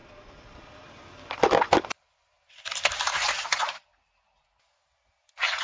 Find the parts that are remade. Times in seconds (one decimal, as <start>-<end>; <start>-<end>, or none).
0.0-3.4